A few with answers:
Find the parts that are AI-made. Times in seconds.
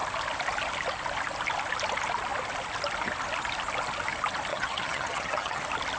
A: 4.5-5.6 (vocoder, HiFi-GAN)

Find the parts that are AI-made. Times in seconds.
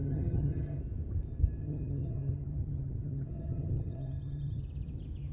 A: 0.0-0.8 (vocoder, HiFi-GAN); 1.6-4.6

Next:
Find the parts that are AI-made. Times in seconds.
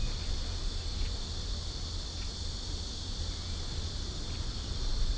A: none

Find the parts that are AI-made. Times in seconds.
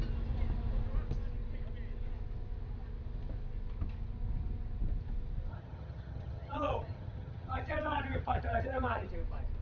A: 5.5-9.1 (vocoder, HiFi-GAN)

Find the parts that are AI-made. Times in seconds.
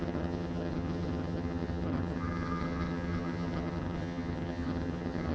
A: 0.0-5.3 (vocoder, HiFi-GAN)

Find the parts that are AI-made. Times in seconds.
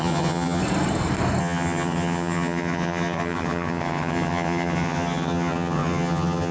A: 0.0-0.6 (vocoder, HiFi-GAN); 1.4-6.5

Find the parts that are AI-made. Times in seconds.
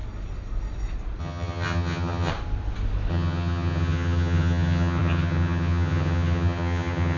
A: 1.2-2.3 (vocoder, HiFi-GAN); 3.1-7.2